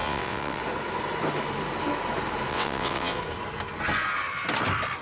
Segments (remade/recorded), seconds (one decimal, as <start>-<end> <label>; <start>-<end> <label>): 0.0-0.6 remade; 0.6-2.5 recorded; 2.5-3.2 remade; 3.2-5.0 recorded

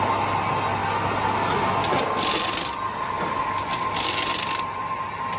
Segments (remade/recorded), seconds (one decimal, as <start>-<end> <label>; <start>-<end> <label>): 0.0-5.4 recorded